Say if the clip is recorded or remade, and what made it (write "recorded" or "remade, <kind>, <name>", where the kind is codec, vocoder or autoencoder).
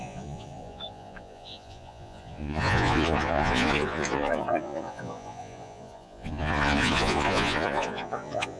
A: remade, vocoder, Vocos